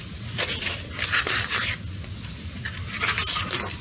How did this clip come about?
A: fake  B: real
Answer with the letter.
B